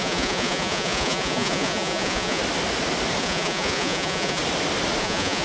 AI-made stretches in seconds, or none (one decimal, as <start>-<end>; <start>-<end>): 0.0-2.4; 3.2-4.4; 5.0-5.4